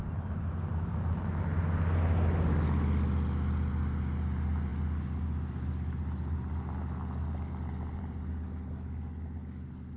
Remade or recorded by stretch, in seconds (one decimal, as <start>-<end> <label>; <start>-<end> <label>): 0.0-10.0 recorded

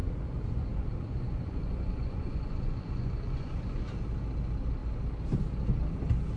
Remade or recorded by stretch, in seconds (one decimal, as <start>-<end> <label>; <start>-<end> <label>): 0.0-3.8 remade; 3.8-6.4 recorded

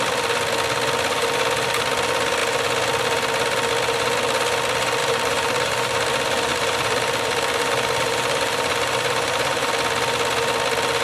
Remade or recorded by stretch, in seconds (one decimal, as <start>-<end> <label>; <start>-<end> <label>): 0.0-5.0 recorded; 5.0-6.1 remade; 6.1-6.5 recorded; 6.5-9.7 remade; 9.7-11.0 recorded

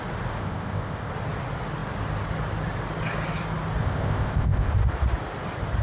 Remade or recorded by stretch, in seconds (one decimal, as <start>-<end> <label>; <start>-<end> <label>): 0.0-0.4 recorded; 0.4-1.1 remade; 1.1-3.8 recorded; 3.8-4.7 remade; 4.7-5.8 recorded